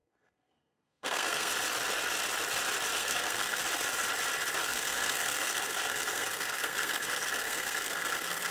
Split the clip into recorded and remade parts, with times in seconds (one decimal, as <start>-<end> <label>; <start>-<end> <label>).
0.0-1.5 remade; 1.5-3.0 recorded; 3.0-3.6 remade; 3.6-4.6 recorded; 4.6-8.5 remade